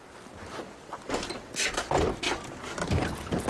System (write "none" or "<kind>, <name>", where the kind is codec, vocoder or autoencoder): none